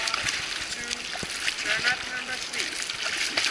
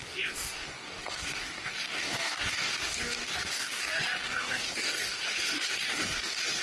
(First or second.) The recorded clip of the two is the first